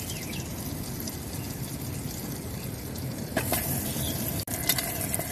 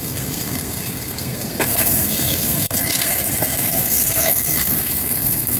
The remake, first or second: second